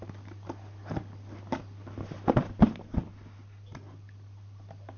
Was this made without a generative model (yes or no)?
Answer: yes